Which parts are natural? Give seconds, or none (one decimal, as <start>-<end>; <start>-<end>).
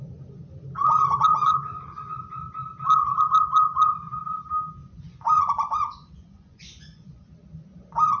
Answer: 0.0-1.3; 2.4-4.8; 7.2-8.2